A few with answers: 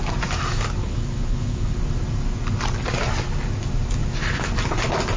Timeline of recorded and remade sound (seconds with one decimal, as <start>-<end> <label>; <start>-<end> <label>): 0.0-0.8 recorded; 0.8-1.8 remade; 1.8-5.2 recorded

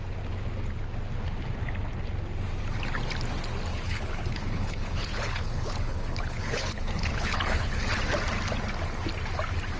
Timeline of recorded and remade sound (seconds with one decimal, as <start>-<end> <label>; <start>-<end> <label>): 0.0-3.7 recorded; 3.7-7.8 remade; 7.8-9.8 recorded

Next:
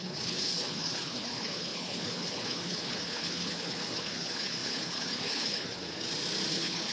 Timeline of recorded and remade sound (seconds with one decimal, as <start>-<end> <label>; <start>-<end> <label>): 0.0-5.8 remade; 5.8-6.5 recorded; 6.5-6.9 remade